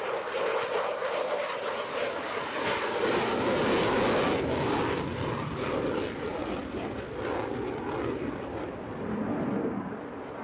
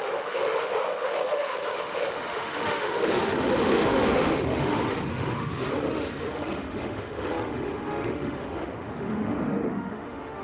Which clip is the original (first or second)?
first